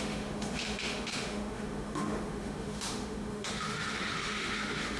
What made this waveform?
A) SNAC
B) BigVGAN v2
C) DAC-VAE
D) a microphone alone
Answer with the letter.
C